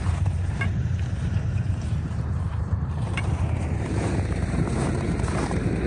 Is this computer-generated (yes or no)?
yes